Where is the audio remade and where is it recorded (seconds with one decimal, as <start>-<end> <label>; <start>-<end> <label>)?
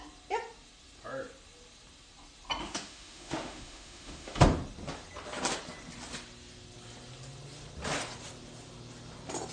0.0-2.6 recorded; 2.6-4.4 remade; 4.4-9.5 recorded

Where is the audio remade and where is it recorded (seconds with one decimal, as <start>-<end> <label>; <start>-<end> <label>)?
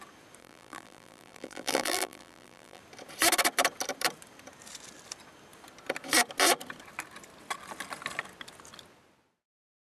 0.0-0.4 recorded; 0.4-2.8 remade; 2.8-10.0 recorded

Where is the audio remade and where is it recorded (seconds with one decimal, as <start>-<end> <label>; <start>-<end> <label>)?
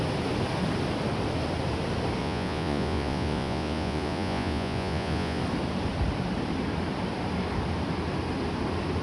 0.0-2.2 recorded; 2.2-5.4 remade; 5.4-9.0 recorded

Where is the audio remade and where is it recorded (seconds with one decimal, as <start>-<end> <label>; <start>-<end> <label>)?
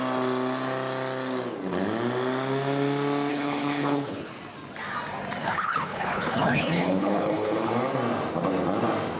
0.0-3.3 recorded; 3.3-4.3 remade; 4.3-5.4 recorded; 5.4-7.7 remade; 7.7-9.2 recorded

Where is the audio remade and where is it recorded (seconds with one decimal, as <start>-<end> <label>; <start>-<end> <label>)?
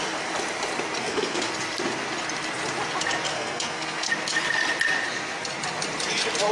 0.0-1.0 recorded; 1.0-1.5 remade; 1.5-3.3 recorded; 3.3-4.1 remade; 4.1-6.5 recorded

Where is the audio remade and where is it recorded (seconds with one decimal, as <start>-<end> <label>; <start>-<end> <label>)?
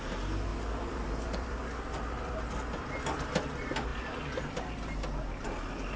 0.0-0.5 recorded; 0.5-2.8 remade; 2.8-6.0 recorded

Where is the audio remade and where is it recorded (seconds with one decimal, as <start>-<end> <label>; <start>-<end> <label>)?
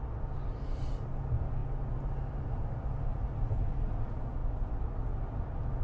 0.0-5.8 recorded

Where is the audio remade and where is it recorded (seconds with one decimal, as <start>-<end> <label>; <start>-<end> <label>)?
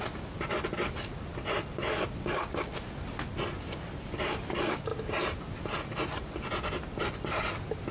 0.0-7.9 recorded